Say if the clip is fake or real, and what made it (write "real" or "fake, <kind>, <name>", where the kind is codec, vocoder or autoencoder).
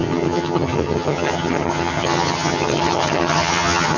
fake, vocoder, HiFi-GAN